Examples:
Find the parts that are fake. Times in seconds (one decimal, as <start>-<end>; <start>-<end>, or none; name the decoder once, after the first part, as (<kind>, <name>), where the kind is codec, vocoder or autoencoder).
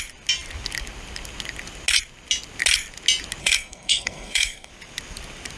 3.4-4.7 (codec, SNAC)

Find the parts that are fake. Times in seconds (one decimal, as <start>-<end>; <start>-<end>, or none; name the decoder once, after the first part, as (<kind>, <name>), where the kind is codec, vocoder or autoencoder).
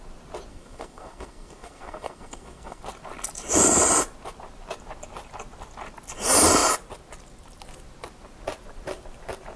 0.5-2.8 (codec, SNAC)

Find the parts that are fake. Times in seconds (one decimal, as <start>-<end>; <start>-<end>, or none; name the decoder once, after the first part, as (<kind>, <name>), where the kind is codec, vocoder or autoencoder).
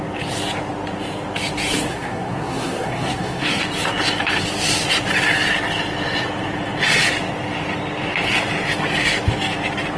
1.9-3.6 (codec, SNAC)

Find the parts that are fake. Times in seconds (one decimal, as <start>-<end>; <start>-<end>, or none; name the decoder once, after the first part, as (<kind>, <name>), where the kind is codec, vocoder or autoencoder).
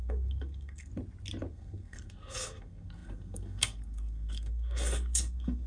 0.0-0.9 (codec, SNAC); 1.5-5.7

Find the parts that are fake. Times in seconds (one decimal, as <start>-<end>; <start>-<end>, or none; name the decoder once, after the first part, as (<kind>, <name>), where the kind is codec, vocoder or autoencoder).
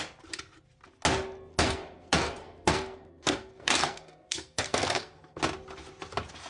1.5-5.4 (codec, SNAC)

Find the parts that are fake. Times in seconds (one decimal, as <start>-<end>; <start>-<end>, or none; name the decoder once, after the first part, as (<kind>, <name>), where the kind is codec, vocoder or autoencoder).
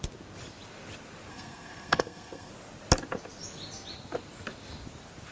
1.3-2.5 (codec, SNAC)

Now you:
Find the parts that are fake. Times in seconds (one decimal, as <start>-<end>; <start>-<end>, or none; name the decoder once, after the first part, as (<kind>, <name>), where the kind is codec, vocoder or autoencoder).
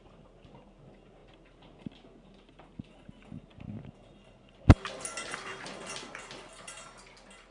none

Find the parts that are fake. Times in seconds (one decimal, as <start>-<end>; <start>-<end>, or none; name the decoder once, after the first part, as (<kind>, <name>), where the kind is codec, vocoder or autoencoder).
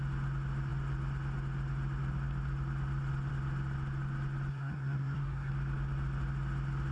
4.5-5.5 (codec, SNAC)